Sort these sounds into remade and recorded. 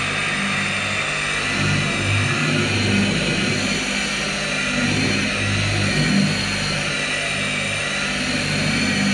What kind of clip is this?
recorded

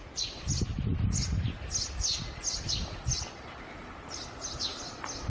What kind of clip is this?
recorded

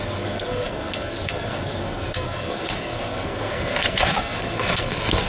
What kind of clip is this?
remade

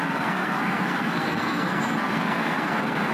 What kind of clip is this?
remade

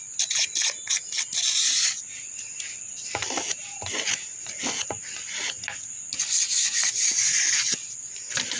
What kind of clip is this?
recorded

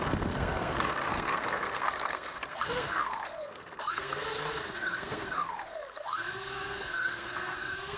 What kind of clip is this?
remade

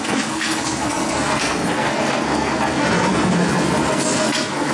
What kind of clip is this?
remade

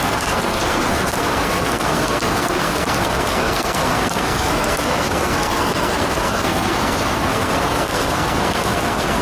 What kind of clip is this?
remade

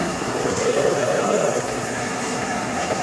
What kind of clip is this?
remade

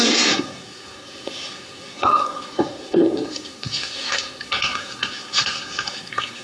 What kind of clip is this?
remade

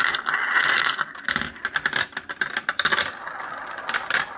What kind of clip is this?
recorded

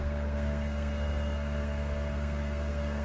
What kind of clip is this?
remade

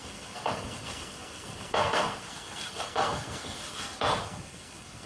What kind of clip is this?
remade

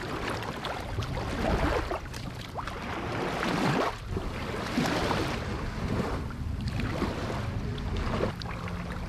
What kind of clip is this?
recorded